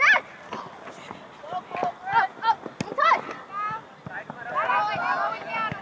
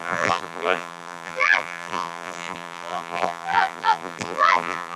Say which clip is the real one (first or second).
first